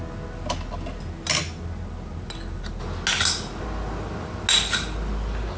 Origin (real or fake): real